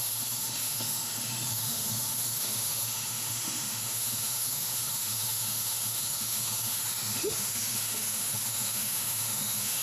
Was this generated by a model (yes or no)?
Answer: yes